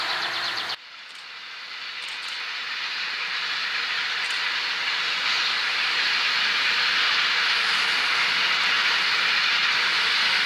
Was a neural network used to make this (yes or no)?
no